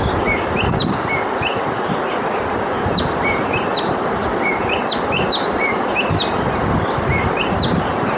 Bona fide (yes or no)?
yes